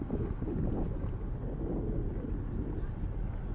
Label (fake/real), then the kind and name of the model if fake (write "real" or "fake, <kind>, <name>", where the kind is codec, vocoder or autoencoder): real